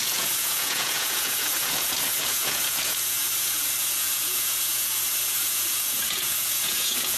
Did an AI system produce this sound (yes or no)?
yes